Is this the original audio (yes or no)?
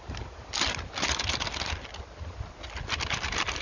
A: yes